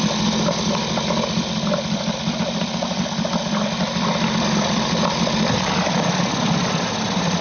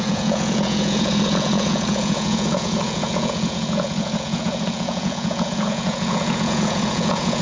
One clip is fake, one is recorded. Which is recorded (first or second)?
first